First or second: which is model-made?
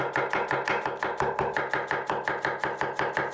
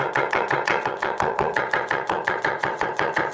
second